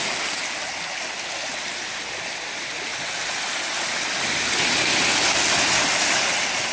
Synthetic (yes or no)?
no